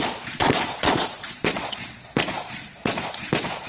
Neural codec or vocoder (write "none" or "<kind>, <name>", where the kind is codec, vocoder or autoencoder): vocoder, Vocos